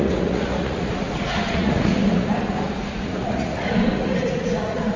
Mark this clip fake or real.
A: fake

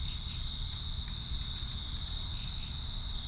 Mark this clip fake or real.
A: real